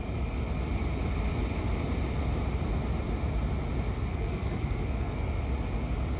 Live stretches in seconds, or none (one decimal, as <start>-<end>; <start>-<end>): 0.0-4.1; 5.4-6.2